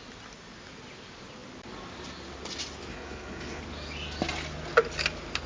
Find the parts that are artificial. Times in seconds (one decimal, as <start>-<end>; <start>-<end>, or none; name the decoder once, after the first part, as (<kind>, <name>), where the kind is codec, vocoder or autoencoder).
2.9-3.6 (codec, HILCodec)